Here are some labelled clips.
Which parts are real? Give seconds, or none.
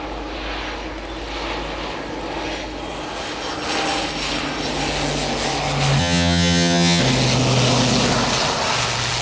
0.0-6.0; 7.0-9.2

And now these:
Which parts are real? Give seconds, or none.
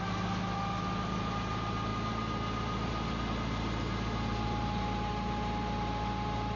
0.0-6.6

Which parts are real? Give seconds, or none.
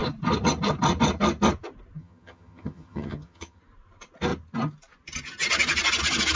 0.0-2.0; 3.6-6.4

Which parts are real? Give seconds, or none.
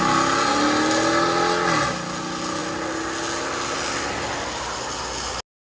0.0-5.7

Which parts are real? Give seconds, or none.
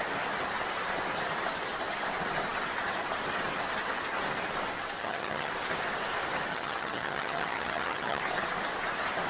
0.0-5.0; 5.5-6.5; 8.2-9.3